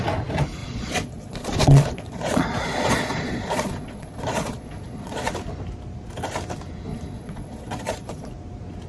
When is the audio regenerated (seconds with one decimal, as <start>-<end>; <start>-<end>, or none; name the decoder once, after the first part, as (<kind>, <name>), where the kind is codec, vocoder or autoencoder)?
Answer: 0.6-5.3 (vocoder, Vocos); 6.9-8.3